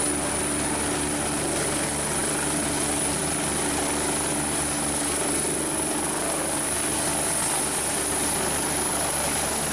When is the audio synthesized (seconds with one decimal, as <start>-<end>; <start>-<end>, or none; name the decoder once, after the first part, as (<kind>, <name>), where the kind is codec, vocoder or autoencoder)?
none